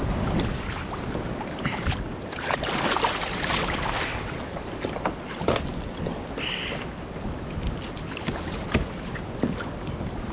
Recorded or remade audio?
recorded